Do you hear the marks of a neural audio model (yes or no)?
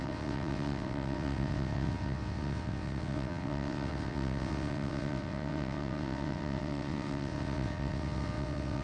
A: yes